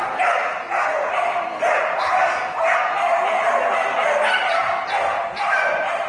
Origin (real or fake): real